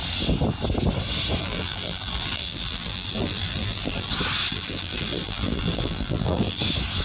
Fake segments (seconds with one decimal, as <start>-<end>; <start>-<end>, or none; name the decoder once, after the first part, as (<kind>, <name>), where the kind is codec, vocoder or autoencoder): 1.4-4.1 (vocoder, BigVGAN v2); 4.5-6.6

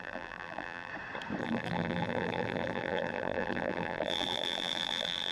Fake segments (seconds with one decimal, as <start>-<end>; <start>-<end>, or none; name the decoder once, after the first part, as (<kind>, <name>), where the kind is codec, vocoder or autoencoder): 0.0-0.9 (vocoder, BigVGAN v2); 1.4-5.3

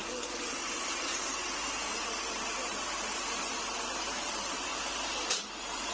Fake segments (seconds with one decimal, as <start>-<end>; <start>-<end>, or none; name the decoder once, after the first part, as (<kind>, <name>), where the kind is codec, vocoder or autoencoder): 0.0-4.7 (vocoder, BigVGAN v2); 5.3-5.9

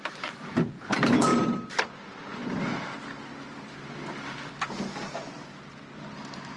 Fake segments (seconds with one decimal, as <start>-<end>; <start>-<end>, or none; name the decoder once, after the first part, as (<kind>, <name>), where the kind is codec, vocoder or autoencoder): none

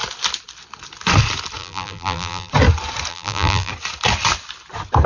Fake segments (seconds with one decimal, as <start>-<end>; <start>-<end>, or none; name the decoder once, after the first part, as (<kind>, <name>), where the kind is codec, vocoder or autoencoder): 1.6-2.5 (vocoder, BigVGAN v2); 3.1-3.7